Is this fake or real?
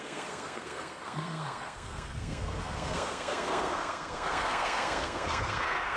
fake